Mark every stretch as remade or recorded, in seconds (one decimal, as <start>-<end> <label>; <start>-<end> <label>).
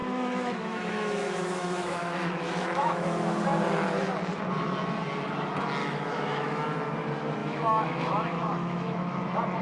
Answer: 0.0-3.4 remade; 3.4-5.8 recorded; 5.8-6.6 remade; 6.6-7.4 recorded; 7.4-9.2 remade; 9.2-9.6 recorded